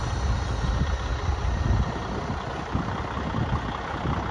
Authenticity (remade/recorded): recorded